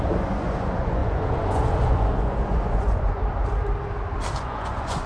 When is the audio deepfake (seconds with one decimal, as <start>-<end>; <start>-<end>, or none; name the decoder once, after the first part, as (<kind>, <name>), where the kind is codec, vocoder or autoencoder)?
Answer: 0.0-3.2 (vocoder, Vocos); 4.4-5.1